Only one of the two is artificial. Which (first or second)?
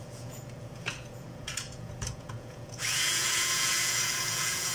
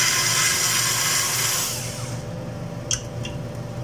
first